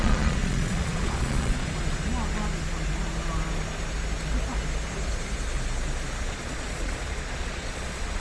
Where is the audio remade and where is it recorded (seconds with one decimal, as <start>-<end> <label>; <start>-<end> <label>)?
0.0-1.6 remade; 1.6-6.3 recorded; 6.3-8.2 remade